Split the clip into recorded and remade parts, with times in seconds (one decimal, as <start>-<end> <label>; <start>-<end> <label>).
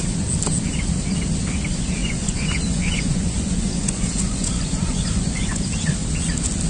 0.0-2.0 recorded; 2.0-5.6 remade; 5.6-6.7 recorded